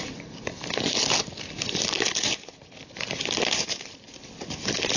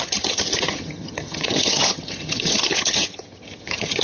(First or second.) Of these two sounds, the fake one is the second